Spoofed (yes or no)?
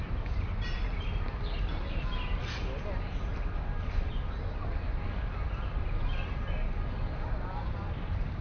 no